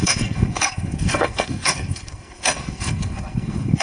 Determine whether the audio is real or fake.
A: fake